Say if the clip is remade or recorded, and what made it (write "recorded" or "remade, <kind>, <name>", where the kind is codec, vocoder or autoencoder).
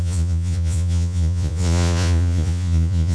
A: remade, vocoder, Vocos